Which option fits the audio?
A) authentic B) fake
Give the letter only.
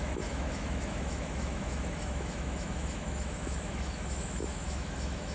B